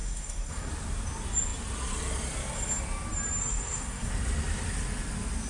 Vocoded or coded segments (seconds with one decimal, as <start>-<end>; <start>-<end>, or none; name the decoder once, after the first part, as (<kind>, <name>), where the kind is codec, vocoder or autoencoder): 0.0-0.7 (codec, SNAC); 3.4-4.1